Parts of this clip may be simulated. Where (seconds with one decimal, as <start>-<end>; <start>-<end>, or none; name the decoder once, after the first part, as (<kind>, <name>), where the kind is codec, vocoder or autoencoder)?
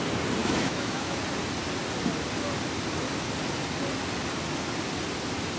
0.4-1.2 (autoencoder, DAC-VAE)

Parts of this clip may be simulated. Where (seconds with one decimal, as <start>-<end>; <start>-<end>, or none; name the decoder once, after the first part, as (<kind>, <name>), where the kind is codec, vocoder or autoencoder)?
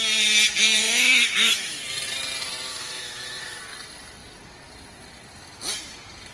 0.6-1.8 (autoencoder, DAC-VAE); 2.7-3.6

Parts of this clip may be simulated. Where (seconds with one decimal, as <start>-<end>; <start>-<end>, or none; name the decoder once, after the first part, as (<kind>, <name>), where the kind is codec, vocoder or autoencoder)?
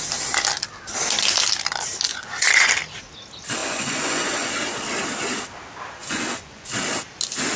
2.1-2.7 (vocoder, Vocos); 3.6-4.5; 6.0-6.7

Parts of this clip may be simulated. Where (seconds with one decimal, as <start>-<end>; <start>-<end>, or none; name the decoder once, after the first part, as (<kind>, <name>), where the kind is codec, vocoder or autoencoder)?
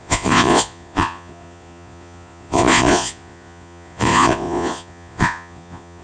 0.0-6.0 (vocoder, Vocos)